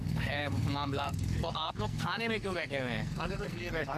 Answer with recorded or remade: remade